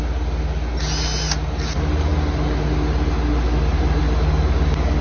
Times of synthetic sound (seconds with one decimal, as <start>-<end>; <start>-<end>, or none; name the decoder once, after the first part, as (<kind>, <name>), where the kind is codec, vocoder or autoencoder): none